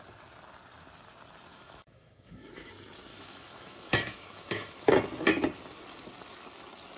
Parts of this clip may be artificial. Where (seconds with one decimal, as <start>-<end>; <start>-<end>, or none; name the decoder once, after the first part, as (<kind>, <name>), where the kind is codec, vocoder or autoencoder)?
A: 1.5-2.7 (autoencoder, DAC-VAE); 3.1-4.9